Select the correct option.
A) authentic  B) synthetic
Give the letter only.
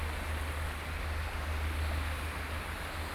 A